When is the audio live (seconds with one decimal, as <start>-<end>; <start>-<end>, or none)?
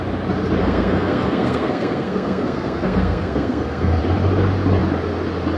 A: 0.0-0.6; 4.0-5.6